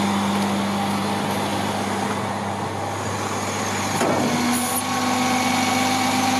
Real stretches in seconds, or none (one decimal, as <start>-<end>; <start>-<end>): 0.0-6.4